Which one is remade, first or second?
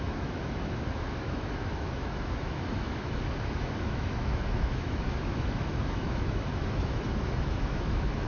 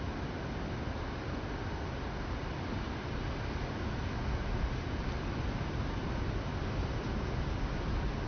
first